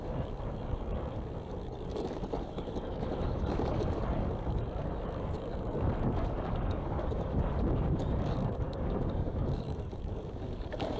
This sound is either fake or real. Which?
fake